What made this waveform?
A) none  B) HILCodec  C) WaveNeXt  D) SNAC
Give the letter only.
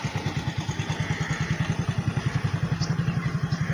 A